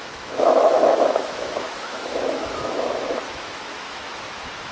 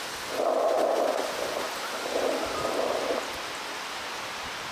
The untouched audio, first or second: second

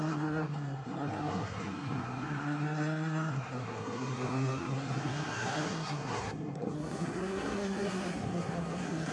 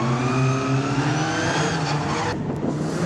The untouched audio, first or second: second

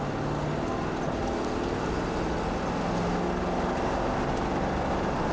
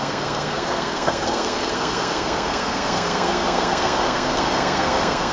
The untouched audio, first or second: first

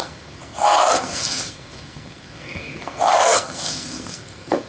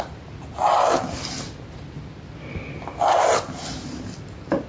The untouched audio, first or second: second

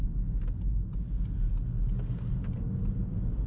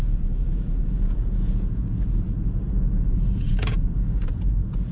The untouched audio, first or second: first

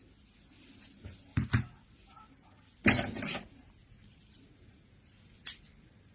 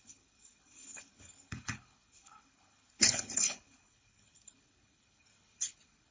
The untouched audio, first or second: first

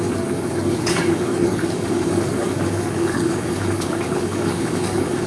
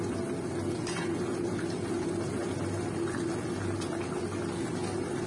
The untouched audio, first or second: second